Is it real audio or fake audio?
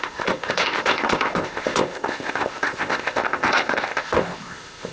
fake